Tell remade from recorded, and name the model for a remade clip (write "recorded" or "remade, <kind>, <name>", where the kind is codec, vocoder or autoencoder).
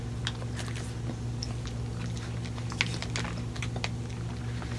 recorded